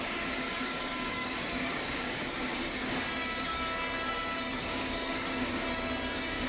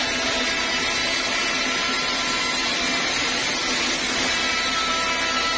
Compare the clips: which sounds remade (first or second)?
first